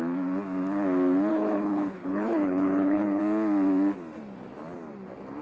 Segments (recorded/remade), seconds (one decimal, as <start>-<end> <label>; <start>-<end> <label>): 0.0-1.3 recorded; 1.3-3.2 remade; 3.2-5.4 recorded